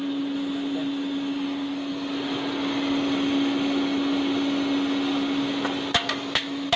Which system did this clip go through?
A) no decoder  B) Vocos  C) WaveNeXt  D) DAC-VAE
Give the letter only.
A